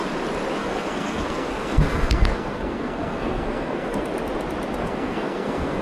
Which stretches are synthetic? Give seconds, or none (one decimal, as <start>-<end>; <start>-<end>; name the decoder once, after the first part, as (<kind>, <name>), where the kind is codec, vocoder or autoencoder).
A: 0.6-4.1 (codec, SNAC); 4.8-5.8